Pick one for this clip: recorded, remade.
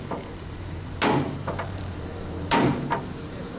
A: remade